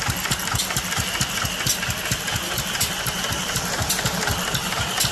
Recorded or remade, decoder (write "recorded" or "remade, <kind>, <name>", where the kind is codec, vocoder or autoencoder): recorded